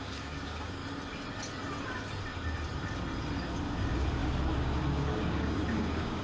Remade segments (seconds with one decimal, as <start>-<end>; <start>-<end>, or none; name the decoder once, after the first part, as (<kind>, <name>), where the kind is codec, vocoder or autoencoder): 0.0-0.8 (codec, DAC); 3.6-6.2